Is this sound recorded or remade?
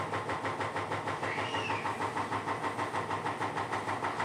remade